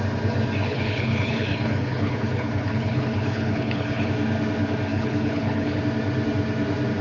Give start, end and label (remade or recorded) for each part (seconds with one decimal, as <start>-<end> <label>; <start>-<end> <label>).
0.0-0.6 recorded; 0.6-4.1 remade; 4.1-4.9 recorded; 4.9-5.8 remade; 5.8-7.0 recorded